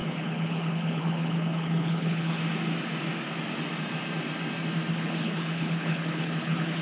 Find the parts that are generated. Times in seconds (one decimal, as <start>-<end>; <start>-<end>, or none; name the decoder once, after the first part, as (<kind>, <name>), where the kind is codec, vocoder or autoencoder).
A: 0.0-2.4 (codec, HILCodec); 4.9-6.8